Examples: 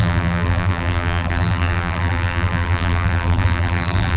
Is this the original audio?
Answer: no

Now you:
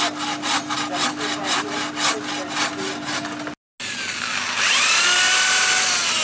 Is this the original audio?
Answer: yes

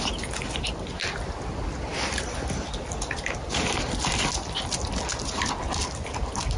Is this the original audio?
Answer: yes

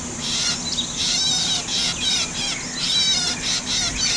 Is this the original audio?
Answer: yes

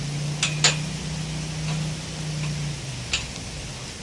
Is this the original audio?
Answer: yes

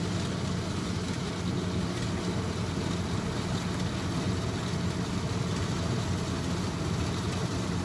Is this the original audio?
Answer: yes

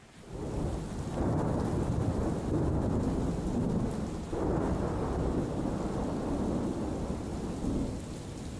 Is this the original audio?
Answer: yes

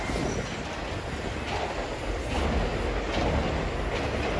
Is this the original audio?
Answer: yes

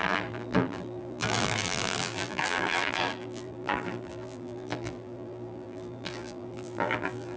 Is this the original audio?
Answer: no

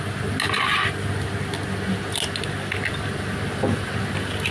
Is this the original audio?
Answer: yes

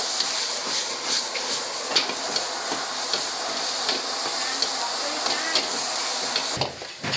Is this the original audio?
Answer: yes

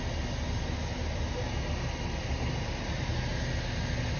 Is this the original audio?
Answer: yes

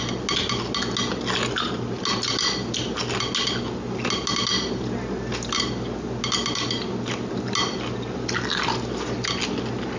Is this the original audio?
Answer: yes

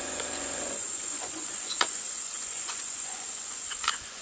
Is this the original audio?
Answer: no